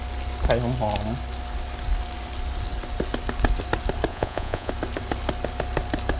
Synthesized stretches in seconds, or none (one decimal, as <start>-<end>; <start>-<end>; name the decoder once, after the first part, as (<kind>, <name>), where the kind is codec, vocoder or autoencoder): 4.1-4.7 (vocoder, Vocos)